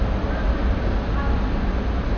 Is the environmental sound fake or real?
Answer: real